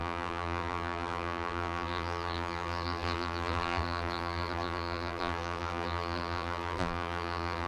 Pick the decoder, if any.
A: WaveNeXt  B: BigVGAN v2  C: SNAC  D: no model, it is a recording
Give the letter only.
B